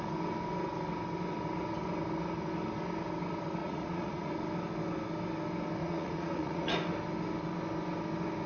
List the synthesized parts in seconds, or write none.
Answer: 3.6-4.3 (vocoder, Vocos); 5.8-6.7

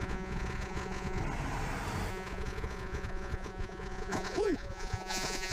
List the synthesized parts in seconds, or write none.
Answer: 0.0-1.2 (vocoder, Vocos); 2.1-5.5

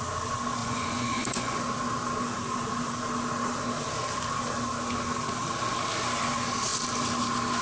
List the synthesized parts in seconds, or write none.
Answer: 0.6-1.6 (vocoder, Vocos)

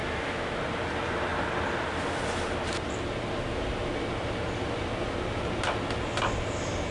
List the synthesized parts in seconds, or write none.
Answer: 0.0-0.6 (autoencoder, DAC-VAE)